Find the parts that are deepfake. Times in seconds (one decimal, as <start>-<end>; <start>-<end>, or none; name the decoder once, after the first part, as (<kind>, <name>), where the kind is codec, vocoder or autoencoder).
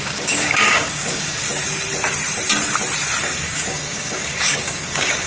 0.0-1.5 (codec, DAC); 3.2-5.3